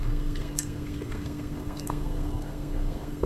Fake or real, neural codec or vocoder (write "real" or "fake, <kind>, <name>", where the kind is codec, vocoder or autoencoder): fake, codec, SNAC